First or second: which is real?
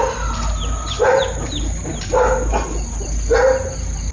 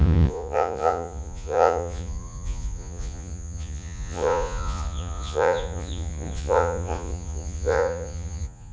first